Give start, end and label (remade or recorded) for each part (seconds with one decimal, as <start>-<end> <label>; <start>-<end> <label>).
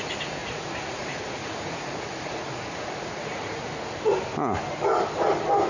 0.0-0.4 recorded; 0.4-3.7 remade; 3.7-5.7 recorded